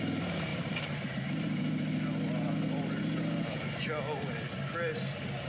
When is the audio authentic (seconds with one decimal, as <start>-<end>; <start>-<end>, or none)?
0.0-0.5; 1.3-5.5